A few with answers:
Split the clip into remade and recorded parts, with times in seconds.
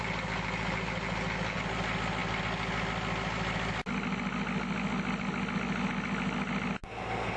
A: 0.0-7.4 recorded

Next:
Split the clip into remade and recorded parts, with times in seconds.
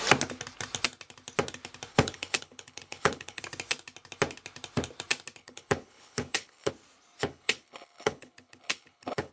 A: 0.0-1.9 recorded; 1.9-3.4 remade; 3.4-5.4 recorded; 5.4-6.7 remade; 6.7-7.2 recorded; 7.2-9.3 remade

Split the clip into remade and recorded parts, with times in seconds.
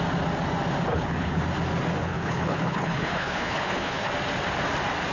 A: 0.0-0.9 recorded; 0.9-1.4 remade; 1.4-2.0 recorded; 2.0-4.1 remade; 4.1-5.1 recorded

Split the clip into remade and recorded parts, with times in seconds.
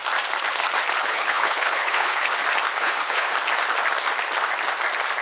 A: 0.0-1.0 recorded; 1.0-2.3 remade; 2.3-2.8 recorded; 2.8-3.3 remade; 3.3-5.2 recorded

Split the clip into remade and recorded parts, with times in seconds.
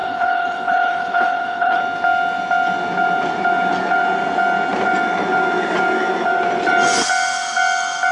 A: 0.0-1.8 remade; 1.8-8.1 recorded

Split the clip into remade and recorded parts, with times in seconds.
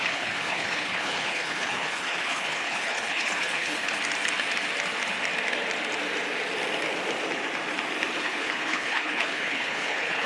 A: 0.0-3.9 remade; 3.9-8.2 recorded; 8.2-10.3 remade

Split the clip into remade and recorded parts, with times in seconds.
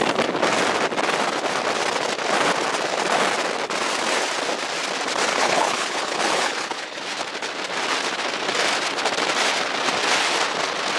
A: 0.0-5.3 recorded; 5.3-7.0 remade; 7.0-11.0 recorded